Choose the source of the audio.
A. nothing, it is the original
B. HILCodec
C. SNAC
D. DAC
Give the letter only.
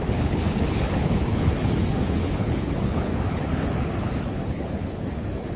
B